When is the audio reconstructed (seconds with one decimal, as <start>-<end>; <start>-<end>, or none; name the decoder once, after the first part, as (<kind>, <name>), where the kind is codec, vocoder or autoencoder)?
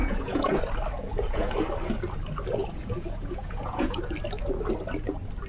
0.0-0.6 (vocoder, Vocos); 1.0-1.5; 2.6-4.0